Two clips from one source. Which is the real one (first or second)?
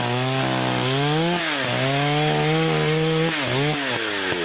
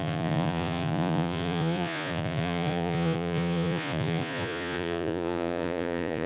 first